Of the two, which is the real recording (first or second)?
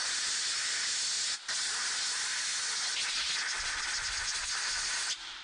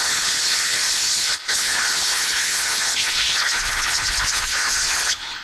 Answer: first